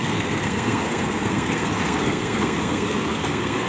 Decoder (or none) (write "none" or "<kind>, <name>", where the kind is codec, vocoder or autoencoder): codec, SNAC